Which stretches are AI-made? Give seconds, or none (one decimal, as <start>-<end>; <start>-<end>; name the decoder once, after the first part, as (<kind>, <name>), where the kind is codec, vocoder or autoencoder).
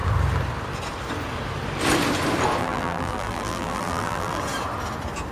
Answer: 2.6-4.4 (vocoder, BigVGAN v2)